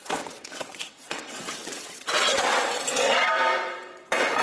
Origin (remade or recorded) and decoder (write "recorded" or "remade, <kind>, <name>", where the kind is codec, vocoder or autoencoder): remade, vocoder, WaveNeXt